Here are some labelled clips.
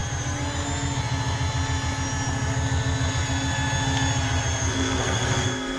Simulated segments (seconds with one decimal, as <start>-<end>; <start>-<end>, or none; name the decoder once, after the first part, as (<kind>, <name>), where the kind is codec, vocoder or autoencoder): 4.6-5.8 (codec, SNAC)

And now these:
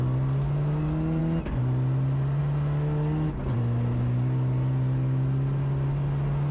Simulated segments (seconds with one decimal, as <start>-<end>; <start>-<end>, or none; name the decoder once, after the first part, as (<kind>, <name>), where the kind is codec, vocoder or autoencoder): none

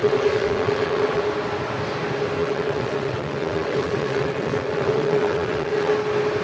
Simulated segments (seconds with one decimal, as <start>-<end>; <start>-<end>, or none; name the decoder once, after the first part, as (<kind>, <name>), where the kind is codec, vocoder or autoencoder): 0.0-1.2 (vocoder, WaveNeXt); 2.4-5.9

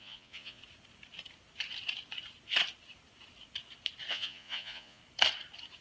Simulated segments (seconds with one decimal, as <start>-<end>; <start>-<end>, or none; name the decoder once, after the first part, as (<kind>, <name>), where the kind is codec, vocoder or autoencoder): 0.0-0.6 (vocoder, Vocos); 4.1-5.0

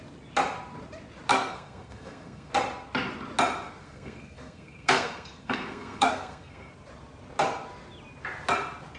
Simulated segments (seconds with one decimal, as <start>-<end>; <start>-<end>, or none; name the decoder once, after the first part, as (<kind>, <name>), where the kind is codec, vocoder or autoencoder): 1.3-2.5 (codec, SNAC); 3.8-6.7

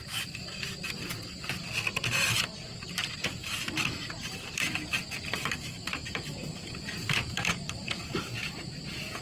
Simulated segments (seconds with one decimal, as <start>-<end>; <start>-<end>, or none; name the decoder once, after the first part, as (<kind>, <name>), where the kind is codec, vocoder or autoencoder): 3.4-8.3 (vocoder, BigVGAN v2)

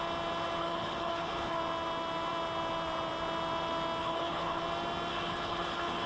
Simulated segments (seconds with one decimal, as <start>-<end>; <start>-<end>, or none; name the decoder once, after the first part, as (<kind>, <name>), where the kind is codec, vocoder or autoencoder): 0.6-1.6 (codec, HILCodec); 4.0-4.6; 5.1-6.1

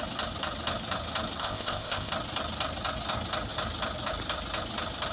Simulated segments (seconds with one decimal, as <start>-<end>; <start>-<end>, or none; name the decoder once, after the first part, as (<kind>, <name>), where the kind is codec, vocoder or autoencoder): 1.4-2.1 (codec, ZipCodec)